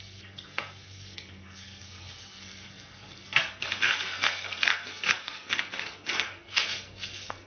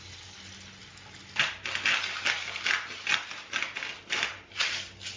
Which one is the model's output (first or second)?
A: first